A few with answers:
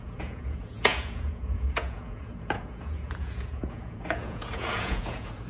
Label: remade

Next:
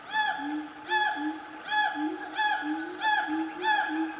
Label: recorded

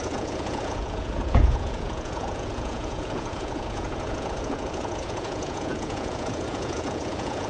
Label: remade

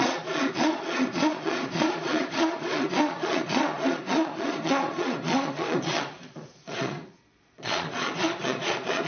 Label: remade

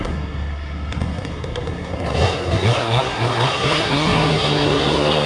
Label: remade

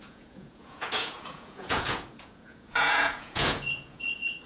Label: remade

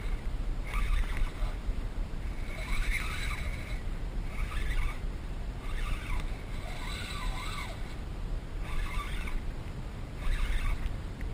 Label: remade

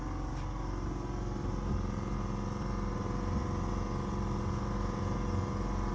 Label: recorded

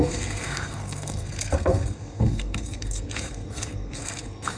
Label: remade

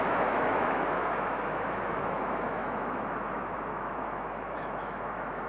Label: remade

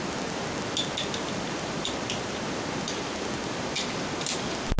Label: recorded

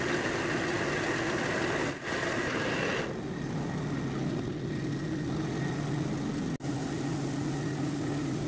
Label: recorded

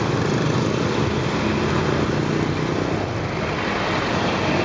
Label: recorded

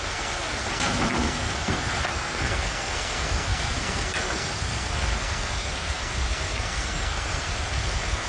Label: remade